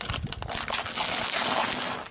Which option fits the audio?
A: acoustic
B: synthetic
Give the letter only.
A